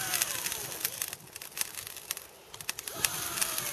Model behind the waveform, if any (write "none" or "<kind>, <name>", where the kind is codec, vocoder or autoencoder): none